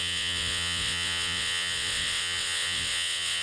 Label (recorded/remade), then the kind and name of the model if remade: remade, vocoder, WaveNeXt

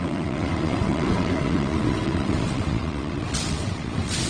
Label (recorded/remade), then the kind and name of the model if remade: remade, vocoder, WaveNeXt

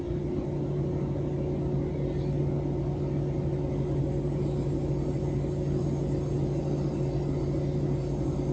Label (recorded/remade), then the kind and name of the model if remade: recorded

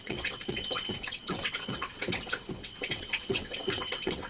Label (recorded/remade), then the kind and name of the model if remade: remade, vocoder, WaveNeXt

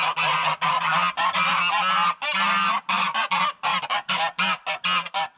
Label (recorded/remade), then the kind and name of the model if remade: recorded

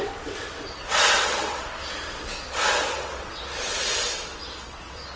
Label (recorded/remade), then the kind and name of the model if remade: remade, vocoder, WaveNeXt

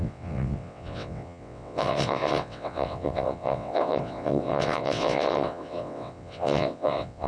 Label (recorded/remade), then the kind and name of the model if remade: remade, vocoder, WaveNeXt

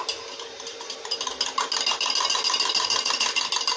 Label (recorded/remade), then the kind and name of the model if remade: recorded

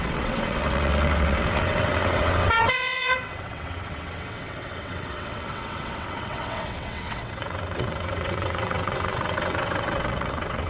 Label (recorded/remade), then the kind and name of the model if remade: remade, vocoder, WaveNeXt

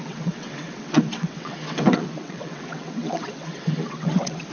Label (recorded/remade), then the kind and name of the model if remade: remade, vocoder, WaveNeXt